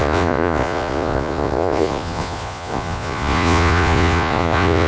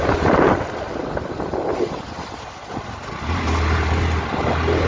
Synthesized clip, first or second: first